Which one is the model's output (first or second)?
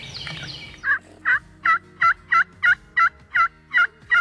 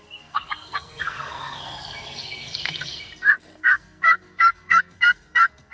second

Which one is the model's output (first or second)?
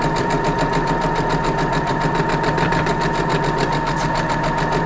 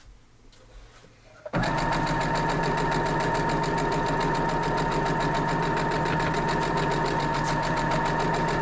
first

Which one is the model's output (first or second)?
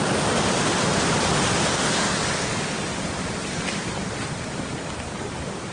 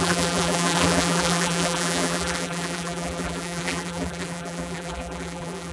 second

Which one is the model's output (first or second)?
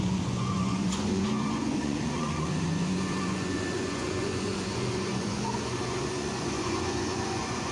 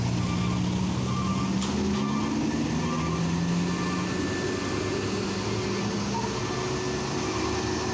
first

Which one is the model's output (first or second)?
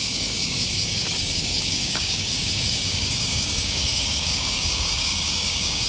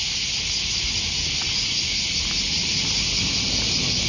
first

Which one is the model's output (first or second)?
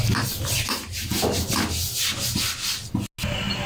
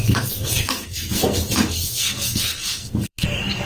second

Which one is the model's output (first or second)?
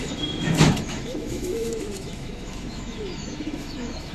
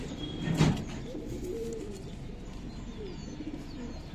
first